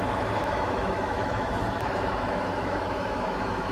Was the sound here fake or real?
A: fake